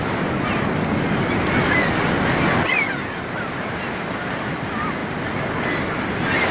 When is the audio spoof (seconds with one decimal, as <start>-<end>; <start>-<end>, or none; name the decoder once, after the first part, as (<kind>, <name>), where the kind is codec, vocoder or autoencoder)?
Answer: none